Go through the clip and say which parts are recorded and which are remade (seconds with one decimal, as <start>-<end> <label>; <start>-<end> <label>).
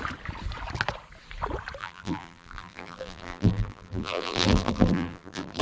0.0-1.8 recorded; 1.8-5.6 remade